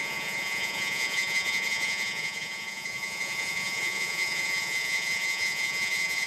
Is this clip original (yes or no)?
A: no